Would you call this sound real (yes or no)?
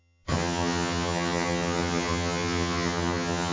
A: no